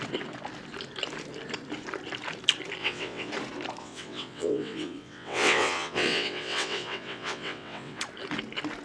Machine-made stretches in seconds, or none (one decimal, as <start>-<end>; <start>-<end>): 2.8-3.3; 3.8-8.0